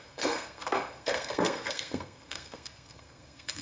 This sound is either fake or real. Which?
fake